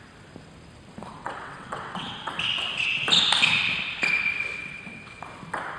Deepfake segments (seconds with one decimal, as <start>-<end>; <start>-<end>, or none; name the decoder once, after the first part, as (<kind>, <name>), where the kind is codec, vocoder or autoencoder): 1.2-2.3 (vocoder, WaveNeXt); 4.6-5.2